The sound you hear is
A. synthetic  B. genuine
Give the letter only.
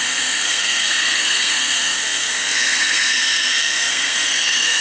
A